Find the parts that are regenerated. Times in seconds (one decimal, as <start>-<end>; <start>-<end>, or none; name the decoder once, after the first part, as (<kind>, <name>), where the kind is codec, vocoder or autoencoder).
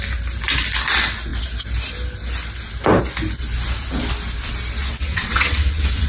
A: 4.8-6.1 (vocoder, WaveNeXt)